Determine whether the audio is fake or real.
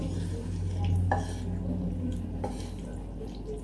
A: real